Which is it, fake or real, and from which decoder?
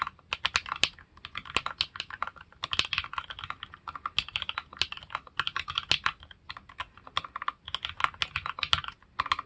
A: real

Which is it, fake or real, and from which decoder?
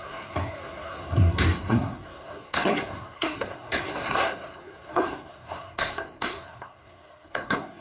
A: fake, codec, SNAC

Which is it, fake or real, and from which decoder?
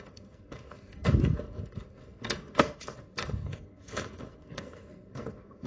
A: fake, codec, SNAC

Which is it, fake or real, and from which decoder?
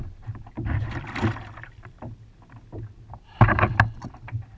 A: fake, vocoder, BigVGAN v2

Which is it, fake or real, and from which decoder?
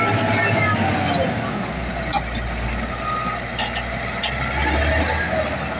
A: real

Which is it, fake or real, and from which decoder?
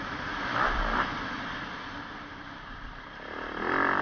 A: fake, vocoder, BigVGAN v2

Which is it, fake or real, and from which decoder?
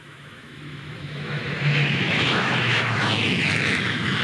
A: fake, autoencoder, DAC-VAE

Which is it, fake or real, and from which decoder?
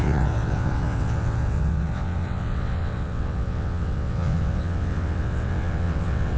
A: fake, vocoder, WaveNeXt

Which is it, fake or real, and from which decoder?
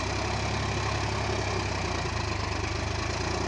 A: real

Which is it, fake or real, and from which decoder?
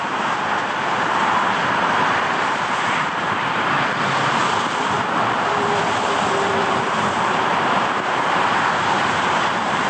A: fake, vocoder, BigVGAN v2